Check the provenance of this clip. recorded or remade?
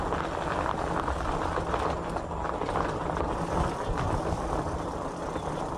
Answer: recorded